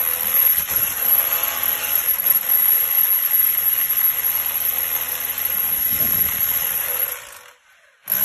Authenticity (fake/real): real